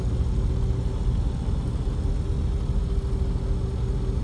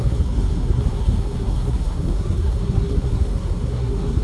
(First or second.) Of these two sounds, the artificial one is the second